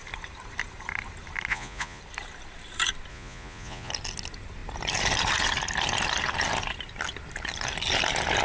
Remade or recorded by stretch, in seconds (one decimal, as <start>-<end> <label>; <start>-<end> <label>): 0.0-1.5 recorded; 1.5-2.0 remade; 2.0-3.1 recorded; 3.1-3.9 remade; 3.9-8.4 recorded